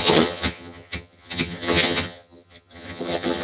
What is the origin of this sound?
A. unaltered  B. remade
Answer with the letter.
B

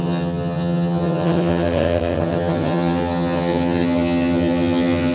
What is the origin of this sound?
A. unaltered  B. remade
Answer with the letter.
B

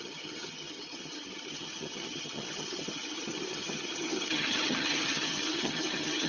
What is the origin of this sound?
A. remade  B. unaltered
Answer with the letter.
A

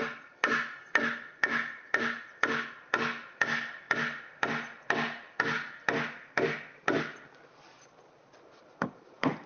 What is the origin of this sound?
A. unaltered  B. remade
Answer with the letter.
A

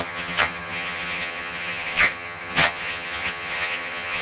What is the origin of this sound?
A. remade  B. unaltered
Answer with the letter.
A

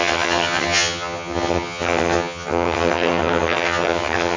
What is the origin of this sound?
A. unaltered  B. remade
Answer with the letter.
B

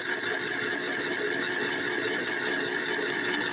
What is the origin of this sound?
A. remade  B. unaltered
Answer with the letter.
B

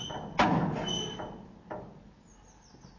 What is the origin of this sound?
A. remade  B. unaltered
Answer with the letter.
B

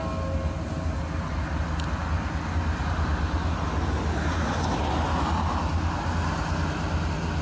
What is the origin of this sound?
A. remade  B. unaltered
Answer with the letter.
B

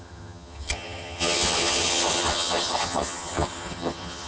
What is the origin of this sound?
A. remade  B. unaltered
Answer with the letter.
A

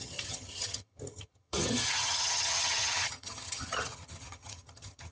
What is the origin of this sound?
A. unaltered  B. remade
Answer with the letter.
B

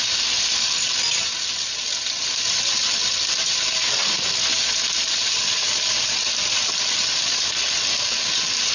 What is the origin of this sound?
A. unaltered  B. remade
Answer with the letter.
A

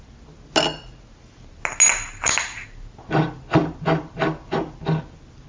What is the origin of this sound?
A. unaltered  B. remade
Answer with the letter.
A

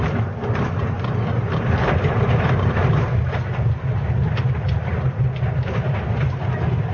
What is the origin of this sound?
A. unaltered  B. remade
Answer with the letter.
A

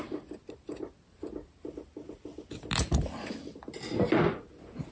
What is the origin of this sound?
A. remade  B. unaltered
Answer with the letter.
B